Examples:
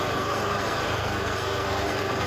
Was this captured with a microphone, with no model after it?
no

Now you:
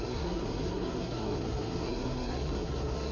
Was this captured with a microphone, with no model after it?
no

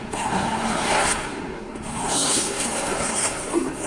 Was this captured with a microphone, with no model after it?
no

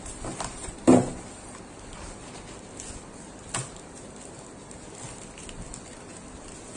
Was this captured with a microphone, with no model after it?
yes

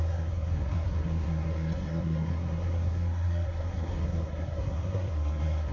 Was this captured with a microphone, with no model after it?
no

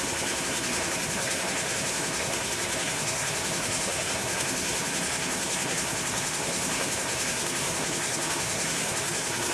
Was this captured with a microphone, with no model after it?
no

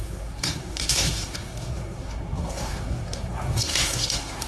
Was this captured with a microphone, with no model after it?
no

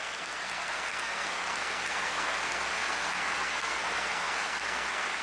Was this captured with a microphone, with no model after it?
no